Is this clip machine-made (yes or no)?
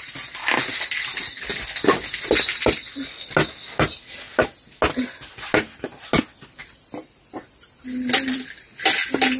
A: no